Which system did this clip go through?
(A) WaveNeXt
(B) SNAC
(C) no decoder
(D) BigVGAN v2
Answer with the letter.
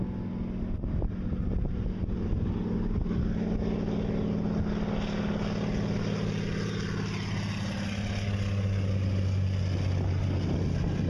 C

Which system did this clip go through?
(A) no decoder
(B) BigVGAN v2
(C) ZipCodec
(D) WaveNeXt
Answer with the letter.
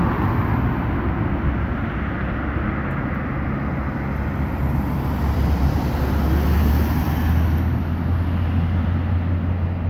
A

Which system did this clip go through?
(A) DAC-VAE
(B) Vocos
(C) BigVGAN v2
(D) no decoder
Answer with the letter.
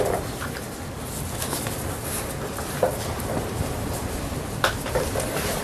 D